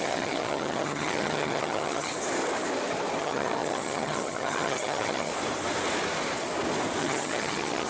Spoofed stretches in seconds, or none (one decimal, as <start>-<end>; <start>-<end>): 0.0-2.1; 3.2-5.3; 7.0-7.9